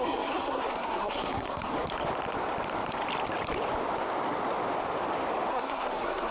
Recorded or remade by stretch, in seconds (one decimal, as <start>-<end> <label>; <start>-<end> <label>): 0.0-1.7 remade; 1.7-5.5 recorded; 5.5-6.3 remade